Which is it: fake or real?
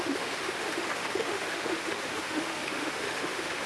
fake